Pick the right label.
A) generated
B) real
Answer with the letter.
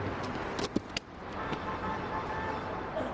B